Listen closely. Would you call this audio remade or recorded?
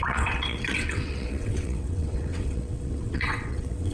remade